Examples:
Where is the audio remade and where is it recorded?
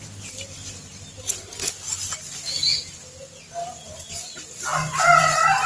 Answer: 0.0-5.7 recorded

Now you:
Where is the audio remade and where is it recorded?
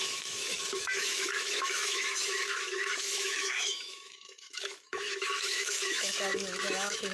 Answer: 0.0-7.1 remade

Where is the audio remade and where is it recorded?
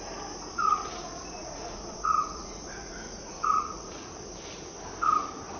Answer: 0.0-0.7 recorded; 0.7-4.1 remade; 4.1-5.6 recorded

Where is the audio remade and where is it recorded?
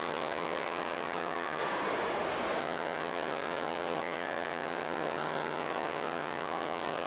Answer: 0.0-1.6 remade; 1.6-2.6 recorded; 2.6-7.1 remade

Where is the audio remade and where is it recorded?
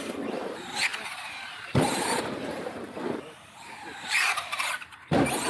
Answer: 0.0-5.5 remade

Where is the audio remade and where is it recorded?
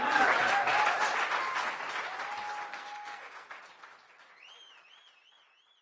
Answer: 0.0-2.7 recorded; 2.7-3.6 remade; 3.6-5.8 recorded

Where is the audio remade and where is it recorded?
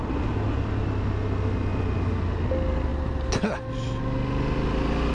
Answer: 0.0-5.1 recorded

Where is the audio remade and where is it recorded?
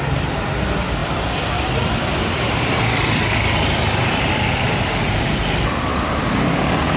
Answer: 0.0-1.0 recorded; 1.0-5.2 remade; 5.2-5.9 recorded; 5.9-7.0 remade